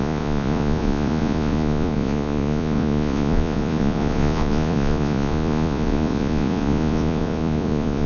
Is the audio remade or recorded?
remade